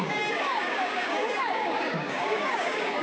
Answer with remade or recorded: remade